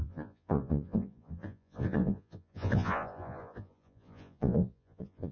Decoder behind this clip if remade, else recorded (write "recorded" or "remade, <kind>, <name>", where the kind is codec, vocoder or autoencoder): remade, vocoder, Vocos